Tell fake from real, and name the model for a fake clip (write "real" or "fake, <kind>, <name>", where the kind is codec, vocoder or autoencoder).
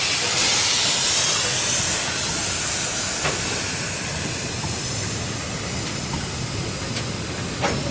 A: real